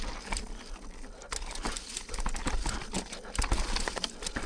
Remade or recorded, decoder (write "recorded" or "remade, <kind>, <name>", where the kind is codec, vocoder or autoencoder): recorded